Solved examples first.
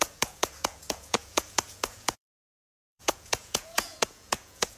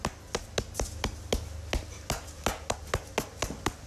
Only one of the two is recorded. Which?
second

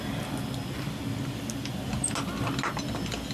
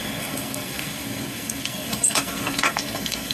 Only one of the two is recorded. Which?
first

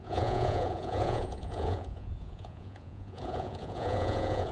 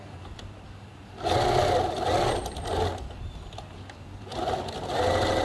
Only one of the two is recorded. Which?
second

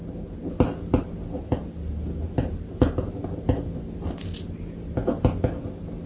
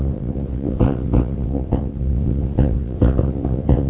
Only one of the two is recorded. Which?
first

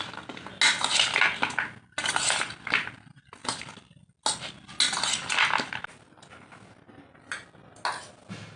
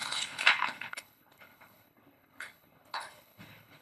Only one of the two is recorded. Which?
first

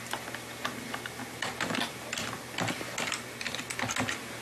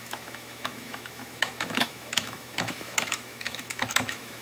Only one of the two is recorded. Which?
first